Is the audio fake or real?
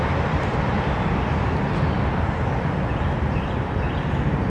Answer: real